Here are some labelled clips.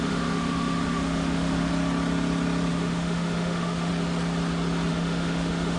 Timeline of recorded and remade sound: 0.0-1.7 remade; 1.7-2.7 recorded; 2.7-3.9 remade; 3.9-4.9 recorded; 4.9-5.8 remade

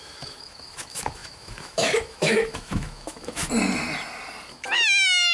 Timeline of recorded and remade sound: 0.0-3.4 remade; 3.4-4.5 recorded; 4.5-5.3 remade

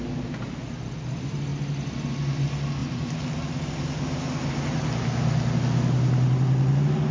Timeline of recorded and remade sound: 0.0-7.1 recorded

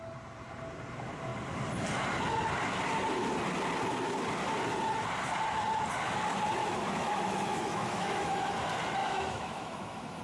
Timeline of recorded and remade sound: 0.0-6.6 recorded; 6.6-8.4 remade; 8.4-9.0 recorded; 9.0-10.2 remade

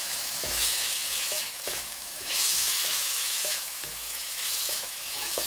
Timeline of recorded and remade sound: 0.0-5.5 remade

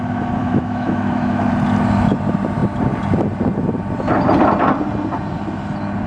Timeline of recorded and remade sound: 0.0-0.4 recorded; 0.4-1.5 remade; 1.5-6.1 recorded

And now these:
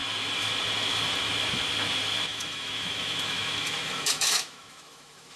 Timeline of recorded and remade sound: 0.0-2.3 recorded; 2.3-5.4 remade

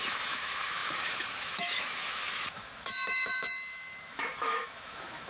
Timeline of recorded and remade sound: 0.0-5.3 remade